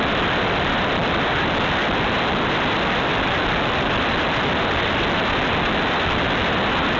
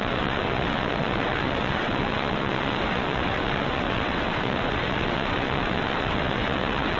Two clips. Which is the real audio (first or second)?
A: first